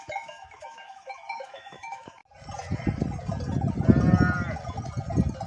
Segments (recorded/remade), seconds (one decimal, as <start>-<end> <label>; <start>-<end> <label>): 0.0-2.2 remade; 2.2-5.5 recorded